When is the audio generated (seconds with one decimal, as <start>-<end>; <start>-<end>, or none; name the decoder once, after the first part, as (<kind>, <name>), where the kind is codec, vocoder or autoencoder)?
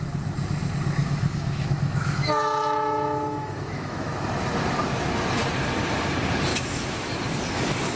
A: 1.0-4.1 (autoencoder, DAC-VAE); 6.5-7.3